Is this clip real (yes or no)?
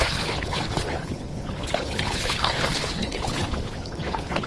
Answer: no